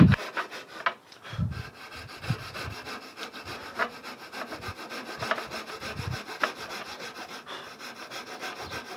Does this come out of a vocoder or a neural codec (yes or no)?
no